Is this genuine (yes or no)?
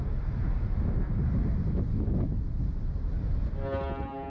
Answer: yes